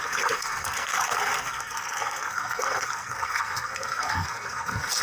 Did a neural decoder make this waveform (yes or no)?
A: yes